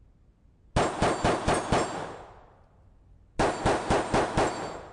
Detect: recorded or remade recorded